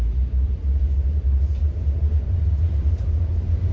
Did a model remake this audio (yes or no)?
yes